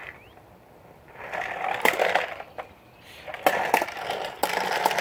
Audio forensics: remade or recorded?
recorded